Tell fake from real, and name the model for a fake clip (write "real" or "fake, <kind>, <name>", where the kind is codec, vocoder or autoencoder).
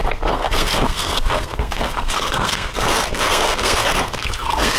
fake, codec, SNAC